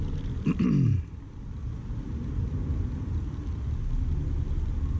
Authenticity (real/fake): real